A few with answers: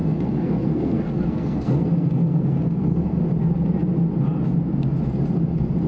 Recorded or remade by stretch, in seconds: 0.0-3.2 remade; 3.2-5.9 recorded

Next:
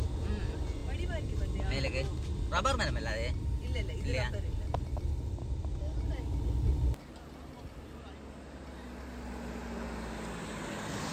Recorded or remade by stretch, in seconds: 0.0-11.1 recorded

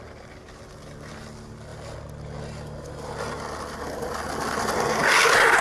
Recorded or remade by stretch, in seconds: 0.0-5.6 recorded

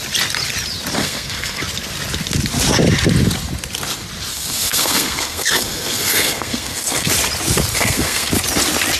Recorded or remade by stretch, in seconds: 0.0-1.0 recorded; 1.0-1.6 remade; 1.6-4.3 recorded; 4.3-7.1 remade; 7.1-7.7 recorded; 7.7-8.3 remade; 8.3-9.0 recorded